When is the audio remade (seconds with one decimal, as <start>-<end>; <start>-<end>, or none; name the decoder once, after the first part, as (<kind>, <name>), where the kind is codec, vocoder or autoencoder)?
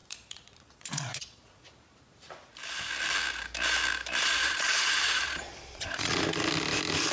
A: 0.0-1.6 (vocoder, Vocos); 4.4-6.2